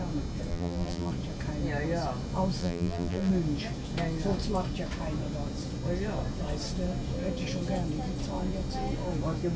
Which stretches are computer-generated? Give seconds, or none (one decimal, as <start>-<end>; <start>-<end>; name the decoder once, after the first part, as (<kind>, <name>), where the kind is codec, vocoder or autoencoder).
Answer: 0.5-1.1 (vocoder, BigVGAN v2); 2.6-3.3